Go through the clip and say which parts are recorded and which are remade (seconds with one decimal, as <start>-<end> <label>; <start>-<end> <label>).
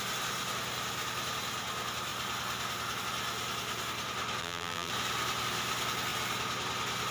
0.0-4.4 recorded; 4.4-4.9 remade; 4.9-7.1 recorded